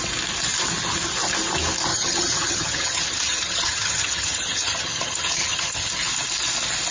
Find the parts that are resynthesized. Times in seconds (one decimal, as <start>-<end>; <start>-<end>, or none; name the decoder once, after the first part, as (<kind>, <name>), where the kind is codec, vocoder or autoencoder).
1.9-6.0 (vocoder, HiFi-GAN)